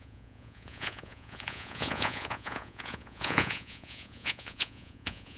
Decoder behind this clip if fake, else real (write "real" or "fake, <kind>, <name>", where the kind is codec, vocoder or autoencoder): fake, vocoder, Vocos